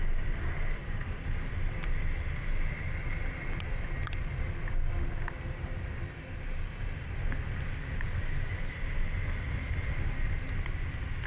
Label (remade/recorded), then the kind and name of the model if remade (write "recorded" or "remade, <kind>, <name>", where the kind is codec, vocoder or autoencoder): recorded